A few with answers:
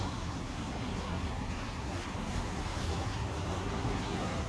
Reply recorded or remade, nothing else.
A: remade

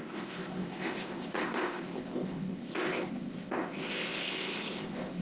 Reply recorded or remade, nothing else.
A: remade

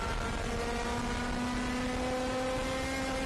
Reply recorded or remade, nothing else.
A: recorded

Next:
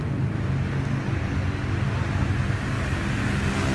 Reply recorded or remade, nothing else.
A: recorded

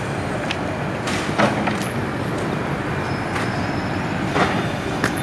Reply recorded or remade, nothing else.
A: remade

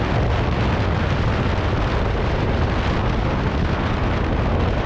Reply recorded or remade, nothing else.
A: recorded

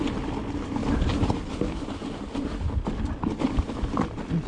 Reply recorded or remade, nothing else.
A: recorded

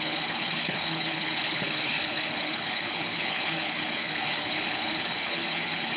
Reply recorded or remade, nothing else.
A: remade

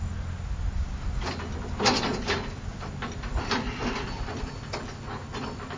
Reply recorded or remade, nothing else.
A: recorded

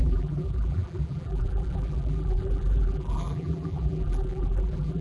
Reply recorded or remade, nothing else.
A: remade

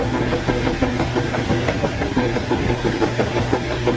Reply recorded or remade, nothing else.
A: remade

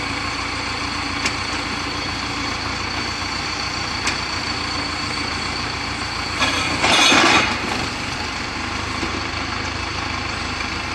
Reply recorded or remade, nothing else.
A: remade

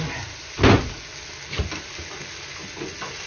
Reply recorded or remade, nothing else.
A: recorded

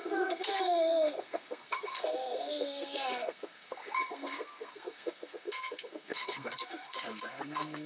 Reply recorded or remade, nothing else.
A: remade